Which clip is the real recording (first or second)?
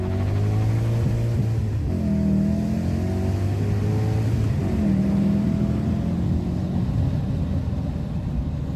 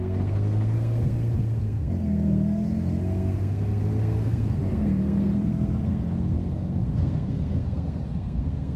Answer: first